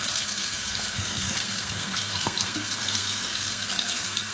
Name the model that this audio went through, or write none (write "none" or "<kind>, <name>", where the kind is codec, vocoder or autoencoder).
codec, SNAC